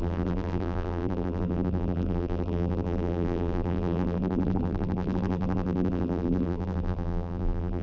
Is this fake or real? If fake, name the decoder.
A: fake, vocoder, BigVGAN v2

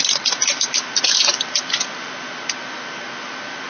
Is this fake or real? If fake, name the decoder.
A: real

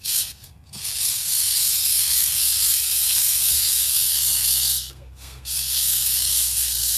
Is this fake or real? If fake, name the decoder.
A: fake, codec, SNAC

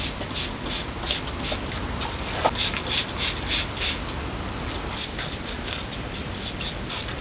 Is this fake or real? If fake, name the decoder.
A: real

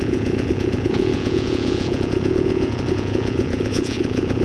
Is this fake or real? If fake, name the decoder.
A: fake, vocoder, Vocos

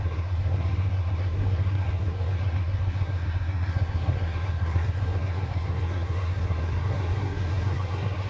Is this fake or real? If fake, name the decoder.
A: fake, codec, SNAC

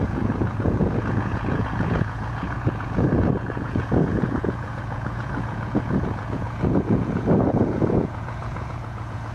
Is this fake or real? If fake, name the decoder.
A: fake, vocoder, Vocos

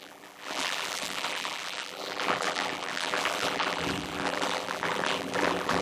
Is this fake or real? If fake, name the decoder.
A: fake, vocoder, BigVGAN v2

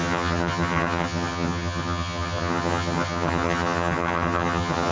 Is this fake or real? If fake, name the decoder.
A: fake, vocoder, HiFi-GAN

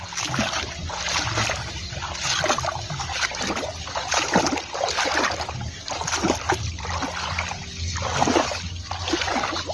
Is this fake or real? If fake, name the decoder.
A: real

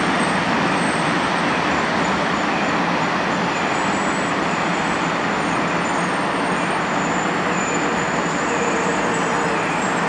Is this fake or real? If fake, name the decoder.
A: real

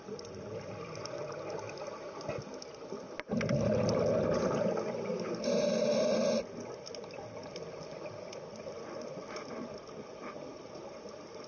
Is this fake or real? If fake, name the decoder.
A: real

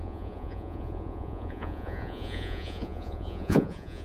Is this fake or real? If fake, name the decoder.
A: fake, vocoder, Vocos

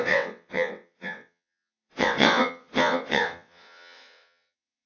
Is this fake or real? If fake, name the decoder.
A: fake, vocoder, WaveNeXt